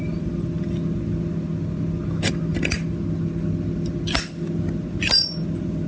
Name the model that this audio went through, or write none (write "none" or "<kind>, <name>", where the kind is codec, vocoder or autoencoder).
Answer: none